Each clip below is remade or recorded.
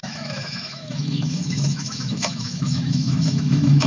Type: remade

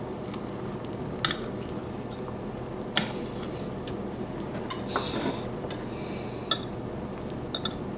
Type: recorded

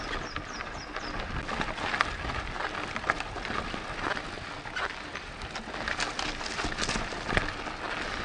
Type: recorded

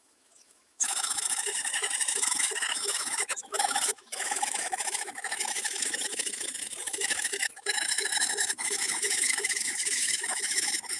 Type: remade